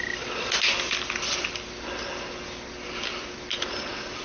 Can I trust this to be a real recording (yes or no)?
yes